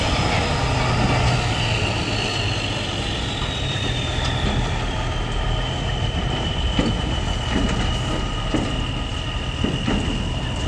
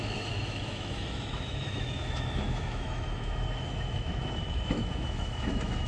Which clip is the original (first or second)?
first